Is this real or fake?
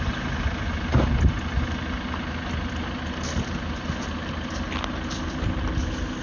real